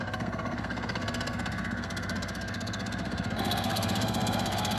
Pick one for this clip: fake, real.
fake